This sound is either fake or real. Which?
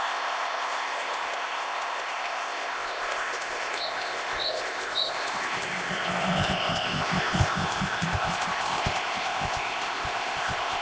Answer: fake